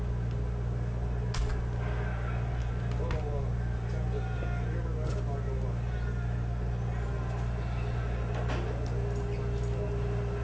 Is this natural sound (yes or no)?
yes